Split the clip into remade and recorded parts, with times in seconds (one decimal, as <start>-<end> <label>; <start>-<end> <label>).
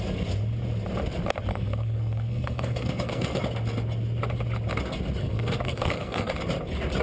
0.0-1.5 recorded; 1.5-3.4 remade; 3.4-5.2 recorded; 5.2-6.3 remade; 6.3-7.0 recorded